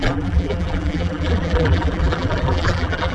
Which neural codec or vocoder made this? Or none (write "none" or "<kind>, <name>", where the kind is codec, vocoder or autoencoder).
vocoder, BigVGAN v2